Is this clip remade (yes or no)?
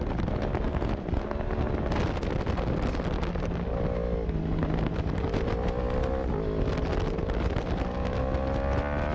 no